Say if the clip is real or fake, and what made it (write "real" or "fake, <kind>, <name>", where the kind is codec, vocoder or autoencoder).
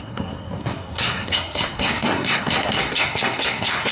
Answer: fake, codec, SNAC